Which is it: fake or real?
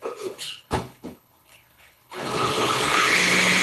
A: fake